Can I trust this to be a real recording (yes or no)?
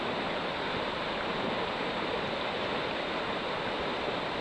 yes